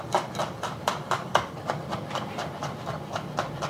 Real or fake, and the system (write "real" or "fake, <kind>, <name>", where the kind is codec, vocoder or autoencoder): fake, vocoder, BigVGAN v2